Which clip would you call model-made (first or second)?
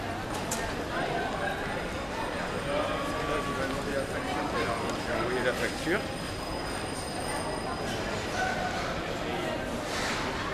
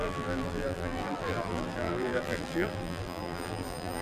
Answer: second